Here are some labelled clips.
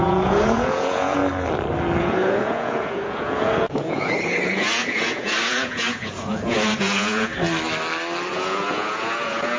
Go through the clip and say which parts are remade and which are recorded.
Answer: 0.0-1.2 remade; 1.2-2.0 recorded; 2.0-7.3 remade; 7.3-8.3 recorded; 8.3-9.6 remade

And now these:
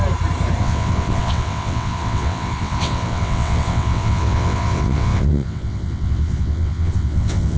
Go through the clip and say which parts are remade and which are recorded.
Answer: 0.0-0.6 recorded; 0.6-7.6 remade